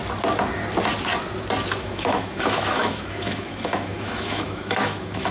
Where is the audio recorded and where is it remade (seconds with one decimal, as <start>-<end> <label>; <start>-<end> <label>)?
0.0-1.8 recorded; 1.8-5.3 remade